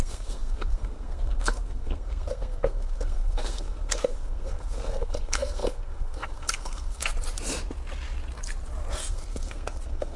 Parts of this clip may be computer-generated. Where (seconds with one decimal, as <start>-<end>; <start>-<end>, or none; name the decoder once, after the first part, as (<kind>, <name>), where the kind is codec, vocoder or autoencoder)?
0.0-7.1 (codec, SNAC); 8.9-10.2